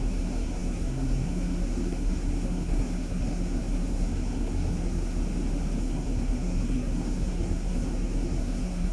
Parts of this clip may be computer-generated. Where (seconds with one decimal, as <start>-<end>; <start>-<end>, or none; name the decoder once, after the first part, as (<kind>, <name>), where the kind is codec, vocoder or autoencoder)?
0.0-5.2 (codec, SNAC); 5.8-8.9